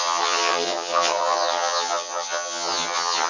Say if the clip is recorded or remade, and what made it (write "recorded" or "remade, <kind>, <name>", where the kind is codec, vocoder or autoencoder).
remade, vocoder, HiFi-GAN